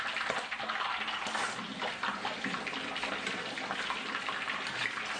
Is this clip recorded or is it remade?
recorded